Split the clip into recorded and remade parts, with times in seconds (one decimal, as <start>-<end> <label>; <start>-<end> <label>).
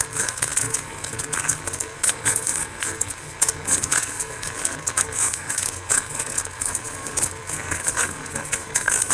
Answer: 0.0-9.1 remade